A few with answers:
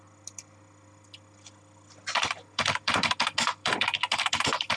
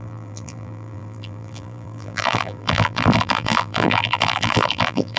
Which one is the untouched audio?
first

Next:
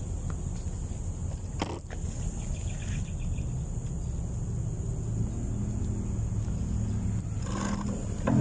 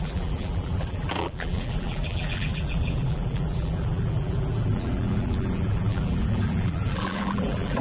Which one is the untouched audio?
first